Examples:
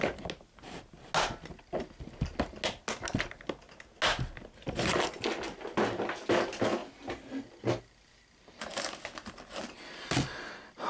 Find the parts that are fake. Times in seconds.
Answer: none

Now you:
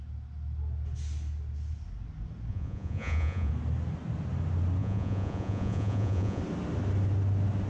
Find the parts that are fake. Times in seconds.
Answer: 2.5-3.5 (vocoder, Vocos); 4.8-6.4

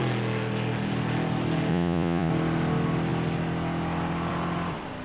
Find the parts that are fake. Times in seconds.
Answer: 1.7-2.3 (vocoder, Vocos)

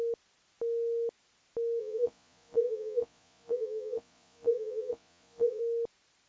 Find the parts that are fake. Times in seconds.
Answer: 1.8-5.6 (vocoder, Vocos)

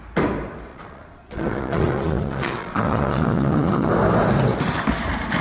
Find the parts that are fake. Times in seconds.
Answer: 0.7-3.9 (vocoder, Vocos)

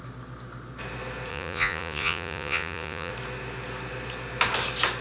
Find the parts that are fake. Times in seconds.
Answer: 1.3-3.1 (vocoder, Vocos)